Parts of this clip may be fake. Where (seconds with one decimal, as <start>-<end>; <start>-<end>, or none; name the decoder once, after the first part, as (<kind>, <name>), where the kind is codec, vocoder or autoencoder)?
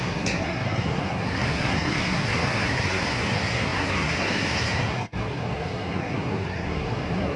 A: 0.0-7.4 (codec, SNAC)